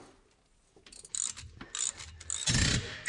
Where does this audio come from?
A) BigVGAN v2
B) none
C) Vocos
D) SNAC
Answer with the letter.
B